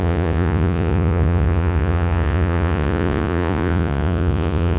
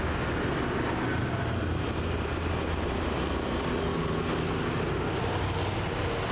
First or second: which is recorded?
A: second